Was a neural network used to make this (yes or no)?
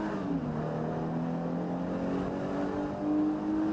no